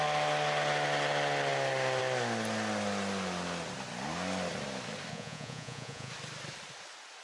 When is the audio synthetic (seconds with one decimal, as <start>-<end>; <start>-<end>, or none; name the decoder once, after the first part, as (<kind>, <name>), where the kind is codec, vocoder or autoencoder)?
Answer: 5.1-6.1 (vocoder, Vocos)